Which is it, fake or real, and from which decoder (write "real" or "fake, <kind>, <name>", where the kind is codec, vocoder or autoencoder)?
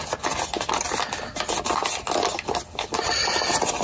real